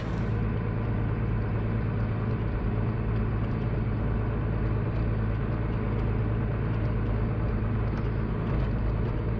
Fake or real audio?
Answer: real